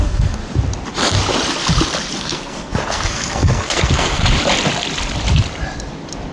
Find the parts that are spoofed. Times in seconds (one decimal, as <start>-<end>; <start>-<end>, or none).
0.0-0.4; 2.2-4.2